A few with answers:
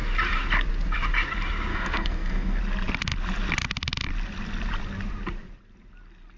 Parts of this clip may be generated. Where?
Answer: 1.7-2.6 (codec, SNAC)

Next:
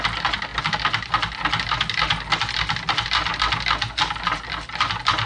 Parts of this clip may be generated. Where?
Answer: none